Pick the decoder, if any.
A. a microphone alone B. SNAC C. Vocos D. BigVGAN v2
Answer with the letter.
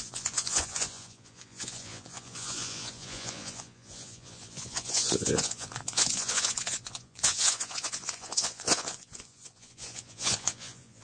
C